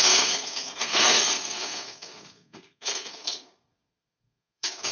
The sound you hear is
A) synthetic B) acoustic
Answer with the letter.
A